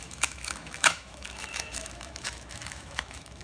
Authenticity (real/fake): fake